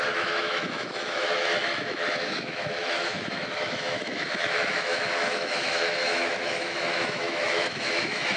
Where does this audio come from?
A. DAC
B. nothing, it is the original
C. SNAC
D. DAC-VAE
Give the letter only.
D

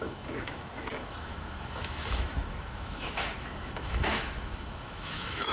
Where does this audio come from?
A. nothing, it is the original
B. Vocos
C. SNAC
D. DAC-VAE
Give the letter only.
D